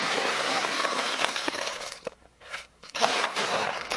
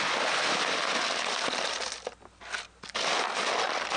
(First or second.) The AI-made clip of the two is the first